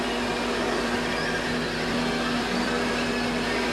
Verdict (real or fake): real